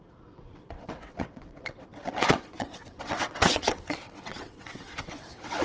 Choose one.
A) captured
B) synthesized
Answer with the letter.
B